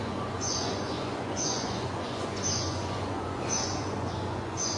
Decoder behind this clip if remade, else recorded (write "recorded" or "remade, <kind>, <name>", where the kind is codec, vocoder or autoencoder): remade, vocoder, Vocos